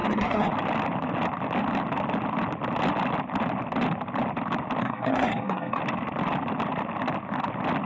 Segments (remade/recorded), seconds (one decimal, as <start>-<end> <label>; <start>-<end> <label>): 0.0-0.5 remade; 0.5-4.8 recorded; 4.8-5.8 remade; 5.8-7.9 recorded